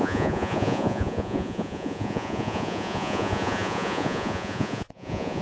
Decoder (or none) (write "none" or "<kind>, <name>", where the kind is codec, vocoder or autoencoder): vocoder, Vocos